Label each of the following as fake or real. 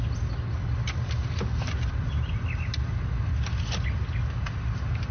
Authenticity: real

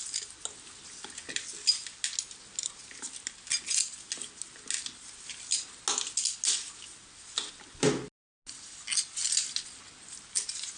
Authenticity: real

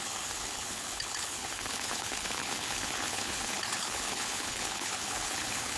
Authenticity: fake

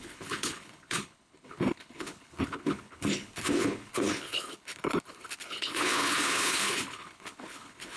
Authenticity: fake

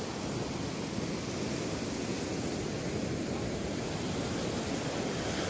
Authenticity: real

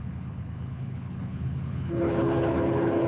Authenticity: fake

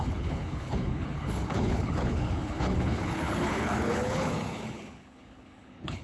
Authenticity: fake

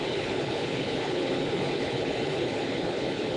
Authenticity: fake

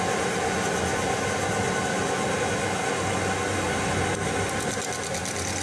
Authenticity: real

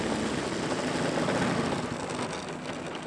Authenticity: real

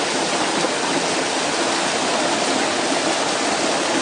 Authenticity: real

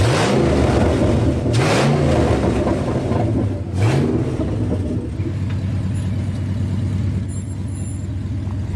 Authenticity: real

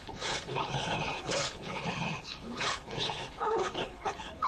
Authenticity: fake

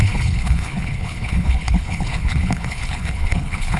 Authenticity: fake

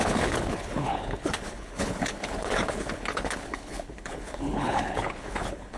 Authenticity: fake